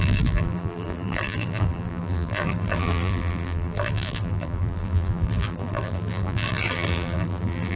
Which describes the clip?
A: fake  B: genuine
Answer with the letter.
A